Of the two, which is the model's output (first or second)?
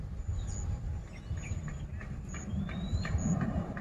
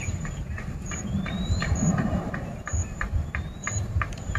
second